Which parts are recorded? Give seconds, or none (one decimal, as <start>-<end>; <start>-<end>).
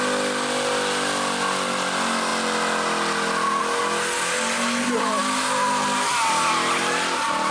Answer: 0.0-7.5